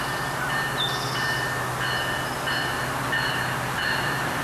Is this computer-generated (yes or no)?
no